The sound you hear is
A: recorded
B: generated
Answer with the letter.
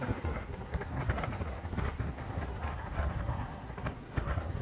B